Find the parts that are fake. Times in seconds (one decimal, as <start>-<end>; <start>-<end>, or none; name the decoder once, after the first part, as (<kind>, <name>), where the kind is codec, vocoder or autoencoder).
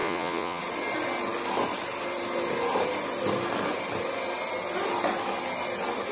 0.0-0.6 (vocoder, Vocos)